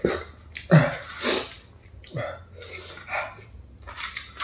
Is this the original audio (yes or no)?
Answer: yes